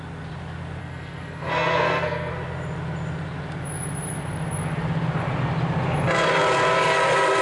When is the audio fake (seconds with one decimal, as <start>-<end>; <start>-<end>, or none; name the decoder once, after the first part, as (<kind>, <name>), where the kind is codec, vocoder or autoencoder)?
0.8-2.3 (codec, SNAC)